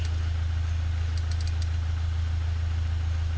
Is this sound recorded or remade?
recorded